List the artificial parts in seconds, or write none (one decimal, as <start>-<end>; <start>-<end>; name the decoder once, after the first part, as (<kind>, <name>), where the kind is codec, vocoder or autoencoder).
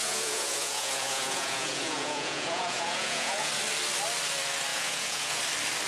0.0-3.5 (vocoder, Vocos); 4.7-5.4